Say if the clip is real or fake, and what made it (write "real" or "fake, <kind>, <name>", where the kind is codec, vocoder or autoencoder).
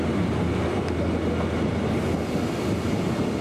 real